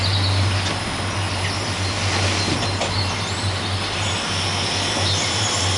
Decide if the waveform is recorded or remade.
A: recorded